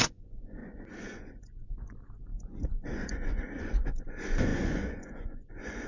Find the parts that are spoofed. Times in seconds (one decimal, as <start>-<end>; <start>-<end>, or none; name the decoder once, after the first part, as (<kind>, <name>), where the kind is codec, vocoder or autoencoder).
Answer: 0.0-5.9 (vocoder, Vocos)